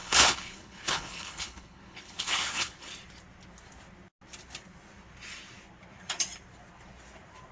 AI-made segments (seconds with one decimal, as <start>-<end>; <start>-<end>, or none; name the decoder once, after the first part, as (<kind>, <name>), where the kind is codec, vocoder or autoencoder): 0.0-2.9 (codec, HILCodec)